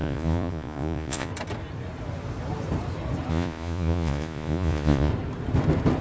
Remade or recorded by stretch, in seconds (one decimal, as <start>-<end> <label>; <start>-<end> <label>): 0.0-1.3 remade; 1.3-3.3 recorded; 3.3-5.1 remade; 5.1-6.0 recorded